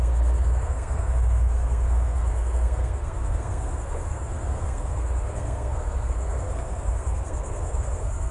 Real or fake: fake